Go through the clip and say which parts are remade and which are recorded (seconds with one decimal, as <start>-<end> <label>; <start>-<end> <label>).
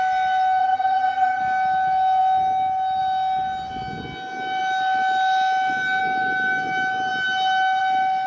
0.0-0.6 recorded; 0.6-1.4 remade; 1.4-8.3 recorded